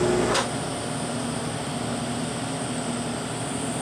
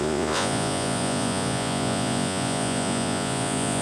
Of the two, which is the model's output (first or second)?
second